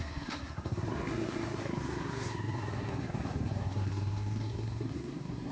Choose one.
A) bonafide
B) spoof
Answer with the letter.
B